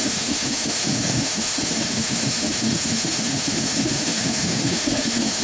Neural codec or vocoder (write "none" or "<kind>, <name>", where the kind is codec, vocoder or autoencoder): autoencoder, DAC-VAE